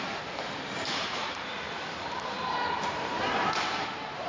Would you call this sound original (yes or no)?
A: no